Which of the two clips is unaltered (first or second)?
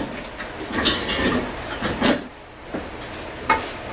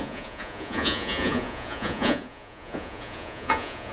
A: first